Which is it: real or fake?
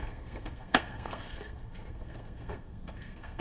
fake